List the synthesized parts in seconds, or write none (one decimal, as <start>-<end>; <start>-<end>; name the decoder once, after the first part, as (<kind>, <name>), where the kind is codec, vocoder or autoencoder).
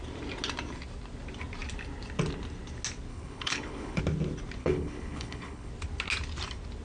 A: 3.1-4.0 (codec, HILCodec); 4.6-5.7